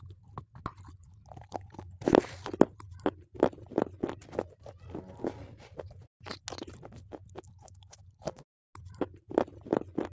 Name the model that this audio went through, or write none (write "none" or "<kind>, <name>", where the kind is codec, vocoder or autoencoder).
none